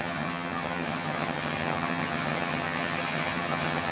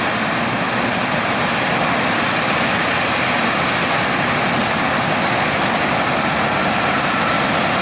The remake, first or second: first